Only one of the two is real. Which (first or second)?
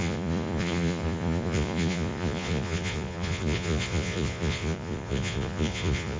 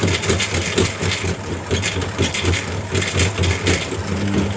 second